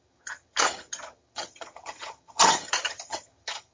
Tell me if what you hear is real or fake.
fake